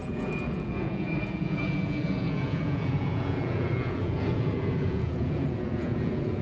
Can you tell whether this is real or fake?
fake